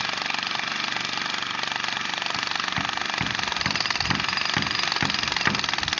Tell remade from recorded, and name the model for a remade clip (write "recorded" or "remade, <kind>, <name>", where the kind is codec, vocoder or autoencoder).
recorded